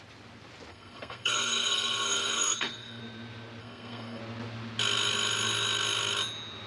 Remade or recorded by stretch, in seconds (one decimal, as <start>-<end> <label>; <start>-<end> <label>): 0.0-0.7 recorded; 0.7-3.0 remade; 3.0-3.6 recorded; 3.6-4.2 remade; 4.2-6.7 recorded